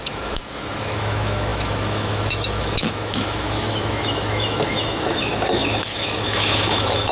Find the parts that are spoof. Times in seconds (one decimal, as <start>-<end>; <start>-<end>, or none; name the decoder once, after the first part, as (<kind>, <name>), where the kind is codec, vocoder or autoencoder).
0.0-7.1 (autoencoder, DAC-VAE)